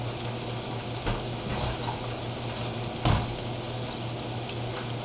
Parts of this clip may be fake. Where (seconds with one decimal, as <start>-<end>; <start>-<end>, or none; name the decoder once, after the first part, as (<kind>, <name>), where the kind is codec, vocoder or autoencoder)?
none